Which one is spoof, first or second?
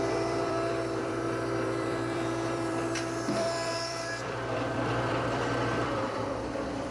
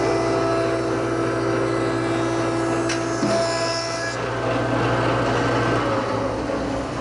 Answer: first